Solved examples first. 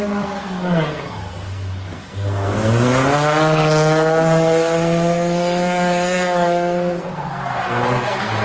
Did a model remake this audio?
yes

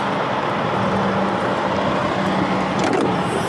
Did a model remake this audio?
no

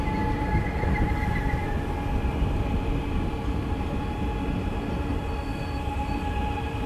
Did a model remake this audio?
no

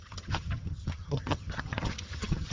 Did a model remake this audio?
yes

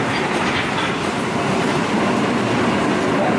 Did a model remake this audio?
yes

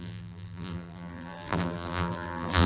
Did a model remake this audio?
yes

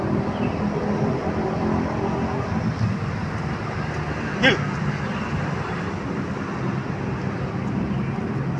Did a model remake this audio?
no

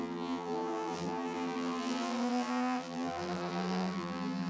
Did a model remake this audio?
yes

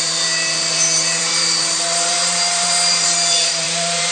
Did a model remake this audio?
yes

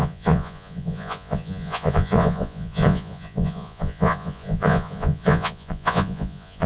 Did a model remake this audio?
yes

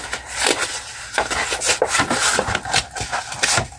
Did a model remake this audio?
no